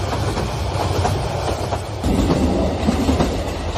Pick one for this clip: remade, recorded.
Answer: remade